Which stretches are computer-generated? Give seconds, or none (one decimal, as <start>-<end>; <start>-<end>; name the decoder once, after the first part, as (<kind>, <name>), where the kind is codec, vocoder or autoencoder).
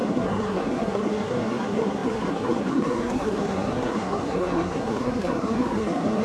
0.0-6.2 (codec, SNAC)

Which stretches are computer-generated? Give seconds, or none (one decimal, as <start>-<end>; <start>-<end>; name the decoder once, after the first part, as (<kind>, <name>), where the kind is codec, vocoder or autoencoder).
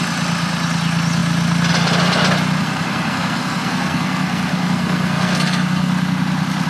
2.6-5.9 (codec, SNAC)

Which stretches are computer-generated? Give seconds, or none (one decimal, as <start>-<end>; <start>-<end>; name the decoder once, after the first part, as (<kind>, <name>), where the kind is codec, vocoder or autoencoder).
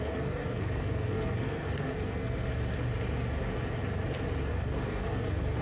0.0-2.5 (codec, SNAC); 4.5-5.6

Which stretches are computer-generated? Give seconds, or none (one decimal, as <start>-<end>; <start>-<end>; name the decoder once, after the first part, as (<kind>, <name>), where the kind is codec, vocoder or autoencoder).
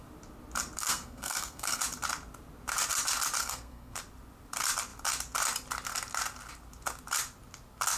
0.8-1.8 (codec, SNAC); 3.4-4.0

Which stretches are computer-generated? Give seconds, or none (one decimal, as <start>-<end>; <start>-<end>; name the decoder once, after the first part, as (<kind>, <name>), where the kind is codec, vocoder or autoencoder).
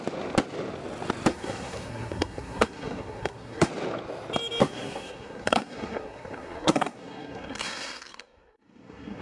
1.3-3.7 (codec, SNAC); 4.6-9.2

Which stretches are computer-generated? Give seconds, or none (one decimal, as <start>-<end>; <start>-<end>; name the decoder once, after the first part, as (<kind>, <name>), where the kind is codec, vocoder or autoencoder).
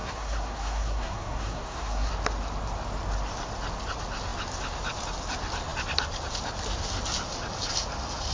0.0-2.1 (codec, SNAC)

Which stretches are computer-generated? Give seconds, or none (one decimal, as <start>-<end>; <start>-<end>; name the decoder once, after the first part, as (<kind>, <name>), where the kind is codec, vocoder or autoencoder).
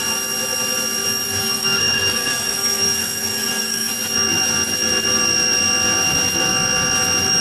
1.4-3.9 (codec, SNAC)